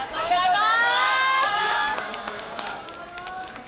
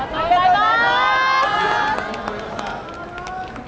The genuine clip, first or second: second